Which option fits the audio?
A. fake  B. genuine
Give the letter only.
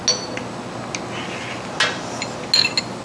B